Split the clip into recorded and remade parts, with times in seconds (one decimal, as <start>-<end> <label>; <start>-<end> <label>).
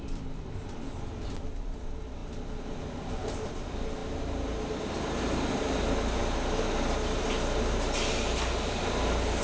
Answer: 0.0-9.4 recorded